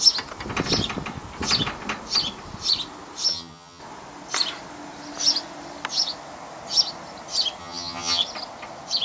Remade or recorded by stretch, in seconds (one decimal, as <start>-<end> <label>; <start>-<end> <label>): 0.0-3.3 recorded; 3.3-3.8 remade; 3.8-7.6 recorded; 7.6-8.2 remade; 8.2-9.0 recorded